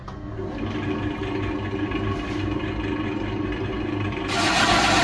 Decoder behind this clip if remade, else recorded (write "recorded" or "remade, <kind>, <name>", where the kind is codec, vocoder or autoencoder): recorded